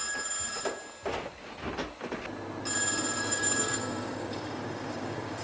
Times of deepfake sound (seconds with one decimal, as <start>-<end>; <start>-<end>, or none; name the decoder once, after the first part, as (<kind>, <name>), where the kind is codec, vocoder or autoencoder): 3.2-5.4 (codec, DAC)